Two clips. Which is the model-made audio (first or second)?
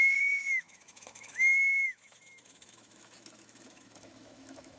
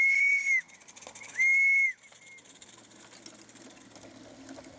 first